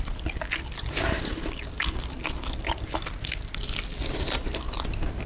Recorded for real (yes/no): yes